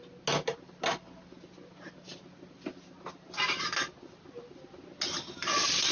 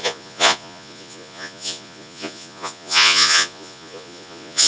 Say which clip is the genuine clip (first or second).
first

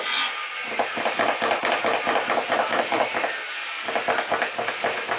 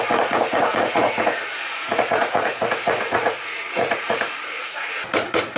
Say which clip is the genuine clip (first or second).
first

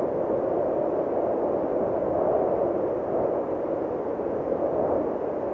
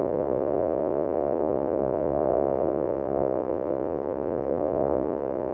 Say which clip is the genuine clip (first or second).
first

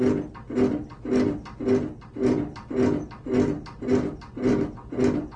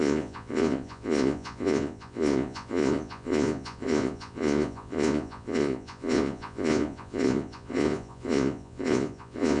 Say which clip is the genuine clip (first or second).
first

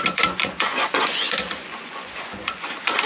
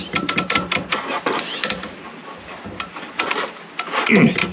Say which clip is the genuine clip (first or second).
second